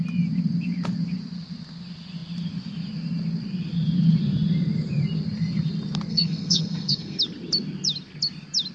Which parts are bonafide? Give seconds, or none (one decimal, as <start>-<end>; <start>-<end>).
0.0-6.1; 7.2-8.7